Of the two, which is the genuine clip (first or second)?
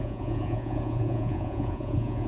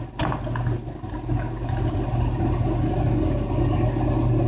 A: second